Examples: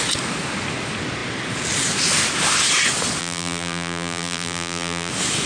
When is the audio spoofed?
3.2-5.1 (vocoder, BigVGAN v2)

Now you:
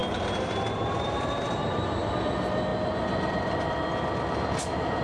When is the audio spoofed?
0.0-2.1 (vocoder, BigVGAN v2)